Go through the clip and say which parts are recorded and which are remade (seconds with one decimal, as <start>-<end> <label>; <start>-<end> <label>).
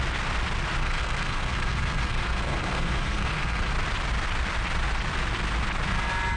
0.0-0.8 recorded; 0.8-3.7 remade; 3.7-6.4 recorded